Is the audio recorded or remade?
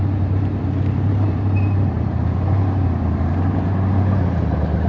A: remade